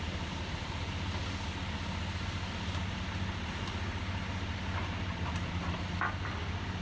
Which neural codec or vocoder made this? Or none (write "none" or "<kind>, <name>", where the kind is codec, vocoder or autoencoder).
none